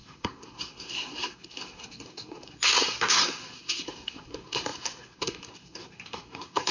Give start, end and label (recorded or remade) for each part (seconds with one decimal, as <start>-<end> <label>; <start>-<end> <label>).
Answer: 0.0-6.7 remade